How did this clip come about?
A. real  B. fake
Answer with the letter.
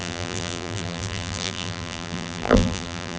B